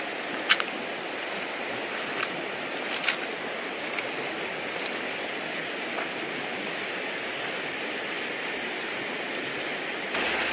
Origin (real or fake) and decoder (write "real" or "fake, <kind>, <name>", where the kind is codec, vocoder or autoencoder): real